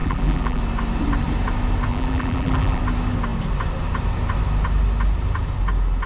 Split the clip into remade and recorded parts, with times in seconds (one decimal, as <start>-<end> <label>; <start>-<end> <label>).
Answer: 0.0-0.6 remade; 0.6-1.9 recorded; 1.9-2.8 remade; 2.8-6.1 recorded